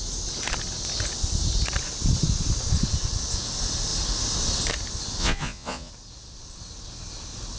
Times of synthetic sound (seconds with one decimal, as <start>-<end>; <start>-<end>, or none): 5.2-5.9